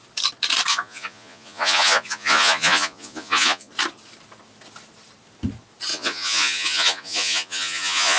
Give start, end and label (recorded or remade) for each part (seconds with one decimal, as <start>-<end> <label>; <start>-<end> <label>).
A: 0.0-0.7 recorded; 0.7-3.7 remade; 3.7-5.9 recorded; 5.9-8.2 remade